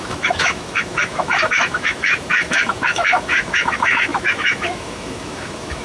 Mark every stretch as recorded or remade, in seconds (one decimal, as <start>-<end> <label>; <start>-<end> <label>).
0.0-5.8 remade